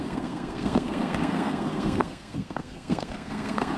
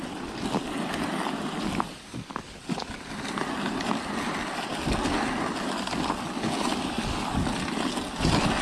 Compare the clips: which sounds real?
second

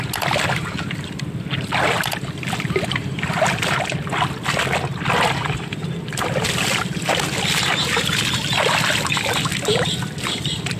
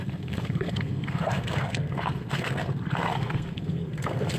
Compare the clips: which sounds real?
first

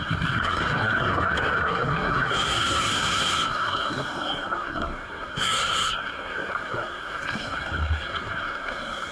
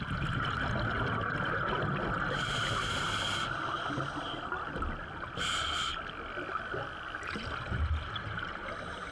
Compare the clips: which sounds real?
second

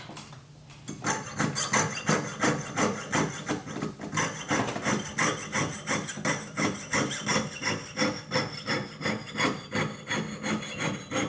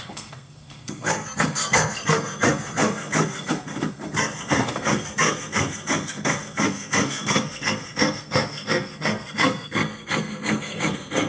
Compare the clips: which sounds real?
first